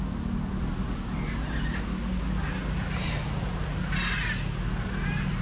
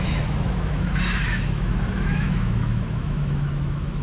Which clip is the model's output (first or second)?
second